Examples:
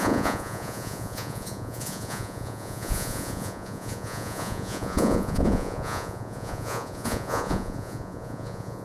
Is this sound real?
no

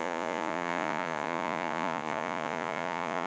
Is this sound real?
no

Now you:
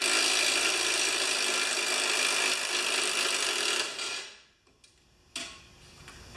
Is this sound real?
yes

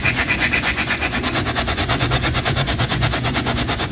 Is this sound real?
no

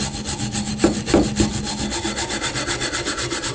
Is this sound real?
yes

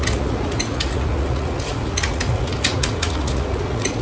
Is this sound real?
no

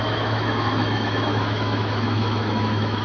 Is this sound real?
no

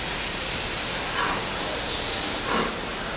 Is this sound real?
yes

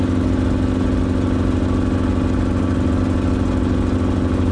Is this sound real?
yes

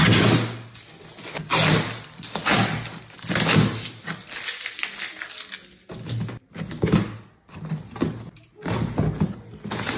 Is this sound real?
yes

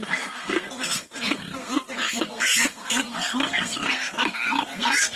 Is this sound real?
no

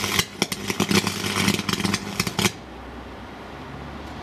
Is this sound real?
yes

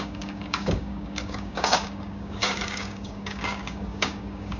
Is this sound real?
no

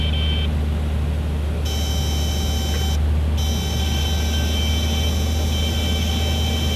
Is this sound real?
yes